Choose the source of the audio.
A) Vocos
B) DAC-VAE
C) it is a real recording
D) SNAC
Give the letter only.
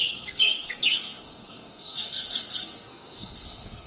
D